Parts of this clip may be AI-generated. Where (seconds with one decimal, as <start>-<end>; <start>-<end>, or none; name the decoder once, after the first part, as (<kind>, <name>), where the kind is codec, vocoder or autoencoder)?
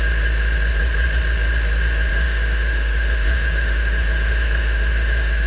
2.1-5.5 (autoencoder, DAC-VAE)